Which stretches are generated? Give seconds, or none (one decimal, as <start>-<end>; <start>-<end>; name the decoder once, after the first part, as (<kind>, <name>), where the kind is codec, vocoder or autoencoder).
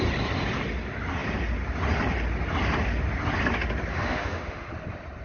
3.9-4.7 (autoencoder, DAC-VAE)